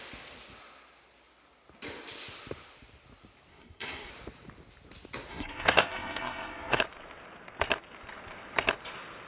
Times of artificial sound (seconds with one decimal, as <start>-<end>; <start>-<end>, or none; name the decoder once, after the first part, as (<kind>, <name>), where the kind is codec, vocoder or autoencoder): 3.5-4.1 (codec, SNAC); 5.3-6.8